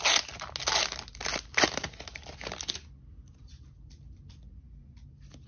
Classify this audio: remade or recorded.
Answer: recorded